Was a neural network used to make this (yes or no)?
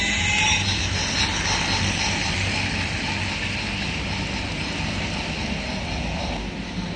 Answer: no